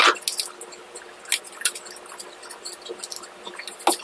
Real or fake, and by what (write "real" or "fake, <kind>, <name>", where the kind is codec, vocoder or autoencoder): real